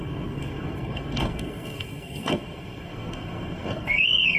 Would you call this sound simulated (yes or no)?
yes